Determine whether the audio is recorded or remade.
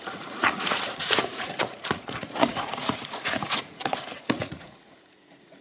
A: remade